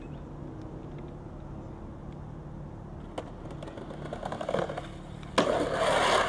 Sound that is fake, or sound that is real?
real